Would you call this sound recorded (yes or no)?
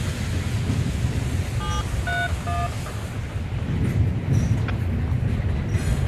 yes